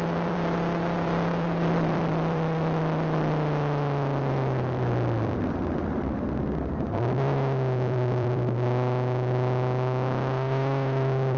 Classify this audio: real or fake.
fake